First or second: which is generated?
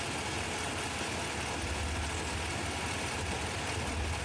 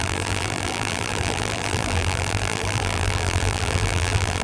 second